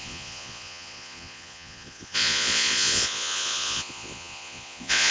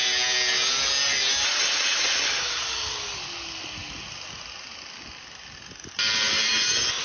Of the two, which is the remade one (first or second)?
first